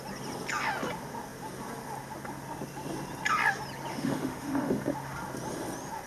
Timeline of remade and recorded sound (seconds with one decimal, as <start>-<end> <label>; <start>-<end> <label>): 0.0-3.9 recorded; 3.9-4.9 remade; 4.9-6.1 recorded